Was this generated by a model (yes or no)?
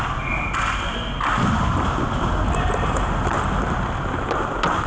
no